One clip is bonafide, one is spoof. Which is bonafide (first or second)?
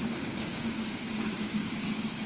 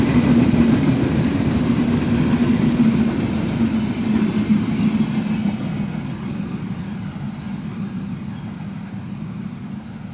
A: second